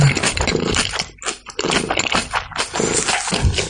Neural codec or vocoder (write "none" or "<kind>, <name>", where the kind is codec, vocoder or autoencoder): none